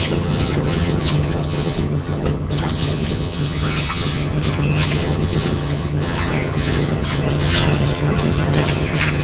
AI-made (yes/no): yes